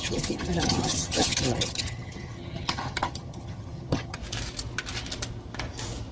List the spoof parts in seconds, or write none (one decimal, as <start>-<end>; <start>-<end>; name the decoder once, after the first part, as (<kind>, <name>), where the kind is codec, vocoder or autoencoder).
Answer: 0.0-4.2 (vocoder, HiFi-GAN)